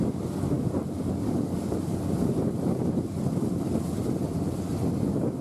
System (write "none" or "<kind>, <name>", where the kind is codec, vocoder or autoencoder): vocoder, BigVGAN v2